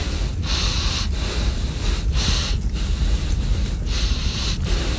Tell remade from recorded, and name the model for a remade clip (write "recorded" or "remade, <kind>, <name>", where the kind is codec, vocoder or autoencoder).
recorded